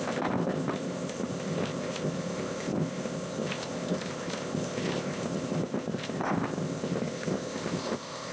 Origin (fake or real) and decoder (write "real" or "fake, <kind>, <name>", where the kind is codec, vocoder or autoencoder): fake, codec, ZipCodec